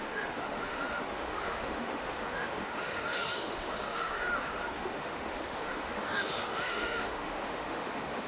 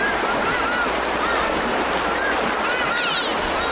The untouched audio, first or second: second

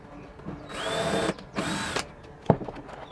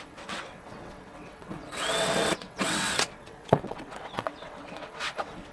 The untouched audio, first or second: first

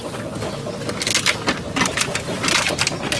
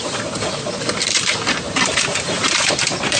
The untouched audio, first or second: first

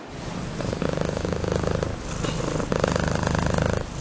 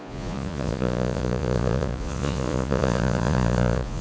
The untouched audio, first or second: first